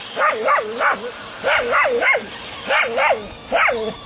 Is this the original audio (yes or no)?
yes